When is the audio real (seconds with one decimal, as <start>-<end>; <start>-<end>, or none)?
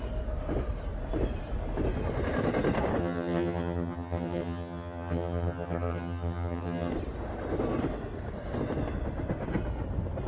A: 0.0-3.0; 6.9-10.3